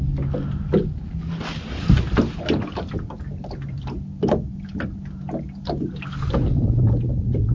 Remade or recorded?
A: recorded